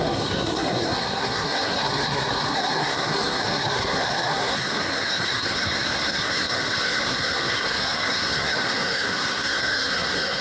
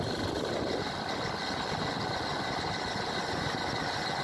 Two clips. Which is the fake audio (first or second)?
first